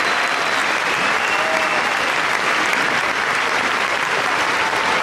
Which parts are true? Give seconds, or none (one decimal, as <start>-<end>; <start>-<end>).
0.0-0.6; 1.2-3.0